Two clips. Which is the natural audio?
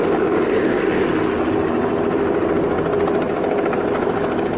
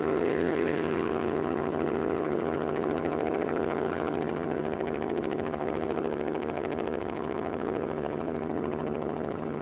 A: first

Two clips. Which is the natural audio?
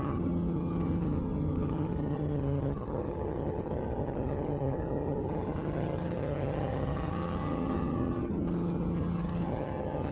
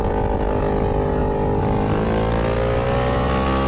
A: second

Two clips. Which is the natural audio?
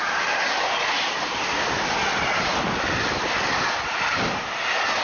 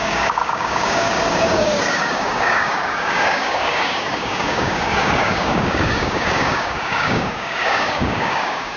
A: first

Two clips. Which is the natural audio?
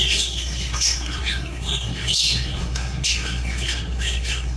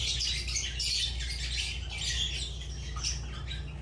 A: second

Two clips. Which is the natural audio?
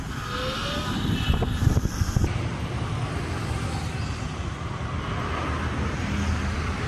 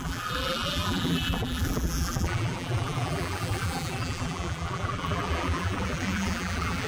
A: first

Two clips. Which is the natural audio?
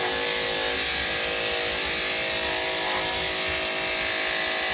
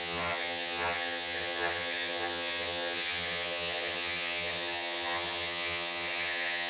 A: first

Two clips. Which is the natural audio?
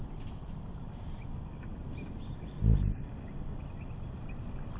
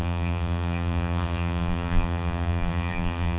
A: first